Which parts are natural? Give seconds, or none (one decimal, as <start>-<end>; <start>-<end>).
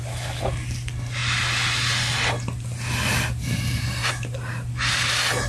0.0-5.5